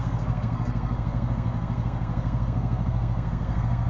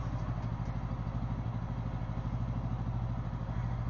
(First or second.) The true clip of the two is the second